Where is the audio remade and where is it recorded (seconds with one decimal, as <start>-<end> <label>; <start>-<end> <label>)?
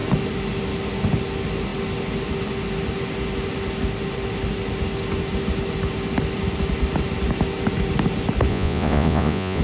0.0-8.5 recorded; 8.5-9.6 remade